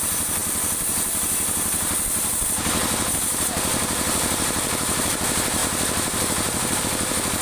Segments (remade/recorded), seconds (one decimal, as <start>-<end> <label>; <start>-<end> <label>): 0.0-3.7 recorded; 3.7-5.1 remade; 5.1-5.6 recorded; 5.6-6.8 remade; 6.8-7.4 recorded